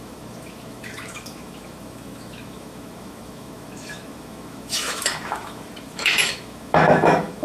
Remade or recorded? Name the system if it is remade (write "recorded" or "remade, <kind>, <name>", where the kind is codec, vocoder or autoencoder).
remade, autoencoder, DAC-VAE